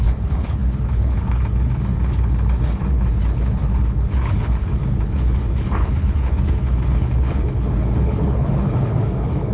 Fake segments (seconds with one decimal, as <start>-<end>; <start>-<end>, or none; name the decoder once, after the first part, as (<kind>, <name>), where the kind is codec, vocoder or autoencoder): 0.0-9.5 (codec, HILCodec)

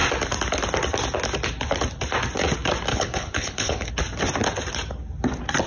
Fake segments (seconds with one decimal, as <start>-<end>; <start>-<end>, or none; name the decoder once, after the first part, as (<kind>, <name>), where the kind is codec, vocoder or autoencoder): 2.9-3.9 (codec, HILCodec)